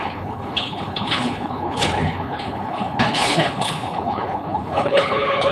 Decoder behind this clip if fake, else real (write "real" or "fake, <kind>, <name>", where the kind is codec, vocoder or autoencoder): fake, codec, HILCodec